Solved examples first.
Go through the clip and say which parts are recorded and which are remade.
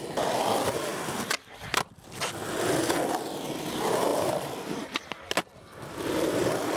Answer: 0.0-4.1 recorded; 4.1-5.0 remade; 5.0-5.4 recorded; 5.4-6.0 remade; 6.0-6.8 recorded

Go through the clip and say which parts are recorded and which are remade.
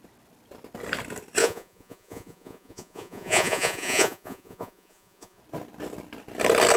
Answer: 0.0-1.4 recorded; 1.4-5.4 remade; 5.4-6.8 recorded